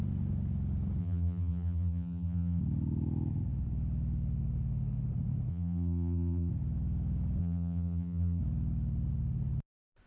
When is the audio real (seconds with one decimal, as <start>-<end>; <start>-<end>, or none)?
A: 0.0-1.0; 2.6-5.5; 6.5-7.4; 8.4-10.1